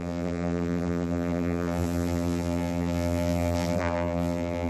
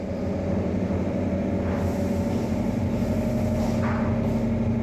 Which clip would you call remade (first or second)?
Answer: first